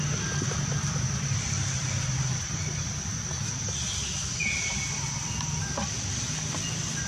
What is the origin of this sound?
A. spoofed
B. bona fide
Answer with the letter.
B